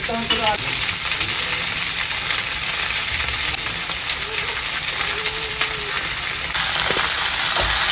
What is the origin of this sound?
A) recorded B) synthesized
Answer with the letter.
B